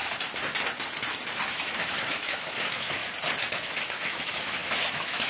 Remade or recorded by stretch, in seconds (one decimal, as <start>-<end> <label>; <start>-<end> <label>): 0.0-1.5 recorded; 1.5-3.0 remade; 3.0-3.5 recorded; 3.5-5.3 remade